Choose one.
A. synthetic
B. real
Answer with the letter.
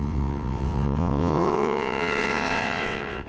A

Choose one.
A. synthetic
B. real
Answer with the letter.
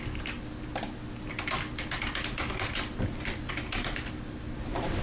B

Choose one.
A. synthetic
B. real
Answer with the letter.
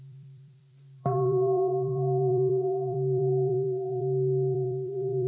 A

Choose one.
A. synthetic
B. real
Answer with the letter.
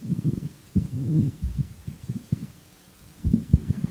A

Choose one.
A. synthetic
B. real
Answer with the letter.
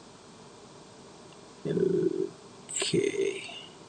B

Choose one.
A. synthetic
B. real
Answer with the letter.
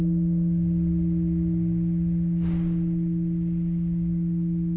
B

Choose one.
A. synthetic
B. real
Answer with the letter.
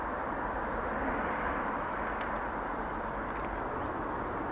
B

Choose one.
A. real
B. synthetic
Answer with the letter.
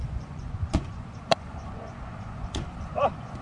B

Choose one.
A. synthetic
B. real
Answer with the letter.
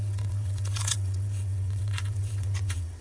A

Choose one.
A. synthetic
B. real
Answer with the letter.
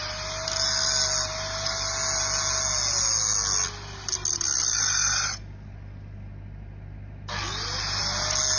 B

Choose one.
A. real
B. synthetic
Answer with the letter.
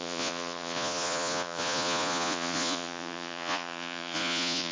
B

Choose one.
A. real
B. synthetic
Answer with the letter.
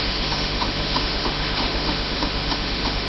B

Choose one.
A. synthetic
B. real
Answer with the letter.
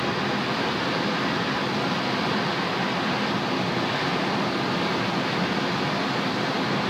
B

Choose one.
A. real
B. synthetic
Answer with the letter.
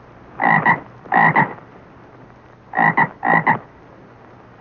A